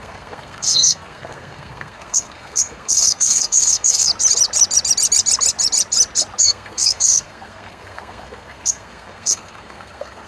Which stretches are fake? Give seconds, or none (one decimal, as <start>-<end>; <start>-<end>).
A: 0.0-4.1; 6.4-10.3